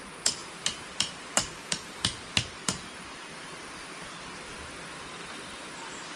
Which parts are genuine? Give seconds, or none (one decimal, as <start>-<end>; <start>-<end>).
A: 0.0-0.4; 4.1-6.2